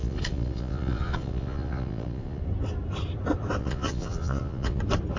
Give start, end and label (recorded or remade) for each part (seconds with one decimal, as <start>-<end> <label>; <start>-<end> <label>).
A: 0.0-2.4 remade; 2.4-3.6 recorded; 3.6-4.8 remade; 4.8-5.2 recorded